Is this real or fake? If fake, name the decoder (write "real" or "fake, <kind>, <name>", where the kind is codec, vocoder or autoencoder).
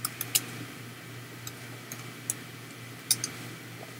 real